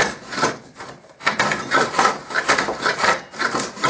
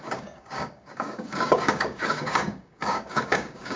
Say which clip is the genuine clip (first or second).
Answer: first